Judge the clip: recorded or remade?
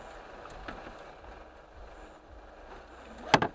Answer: recorded